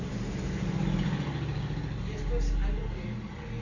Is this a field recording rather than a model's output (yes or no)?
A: yes